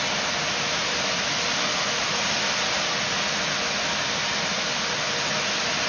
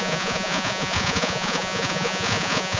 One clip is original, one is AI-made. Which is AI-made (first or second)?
second